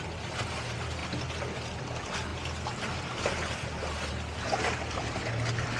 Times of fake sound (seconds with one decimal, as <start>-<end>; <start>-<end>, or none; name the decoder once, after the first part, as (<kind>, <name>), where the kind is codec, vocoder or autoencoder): none